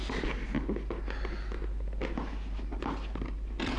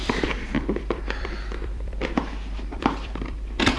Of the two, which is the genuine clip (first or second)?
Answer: first